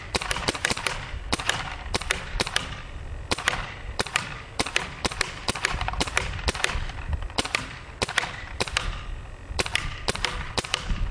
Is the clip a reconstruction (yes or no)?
yes